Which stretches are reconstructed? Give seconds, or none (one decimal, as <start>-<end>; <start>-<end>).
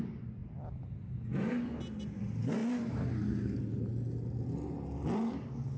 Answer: none